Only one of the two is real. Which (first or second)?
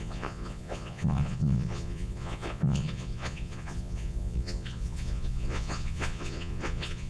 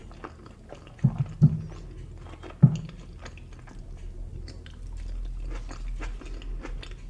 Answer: second